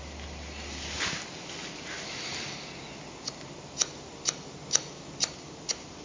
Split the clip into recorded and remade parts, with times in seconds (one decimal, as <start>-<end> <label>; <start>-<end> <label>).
0.0-6.0 recorded